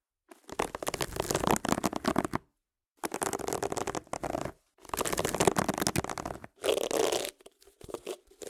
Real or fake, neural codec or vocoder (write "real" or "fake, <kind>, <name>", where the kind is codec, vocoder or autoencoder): real